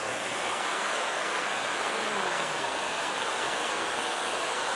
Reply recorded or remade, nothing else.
remade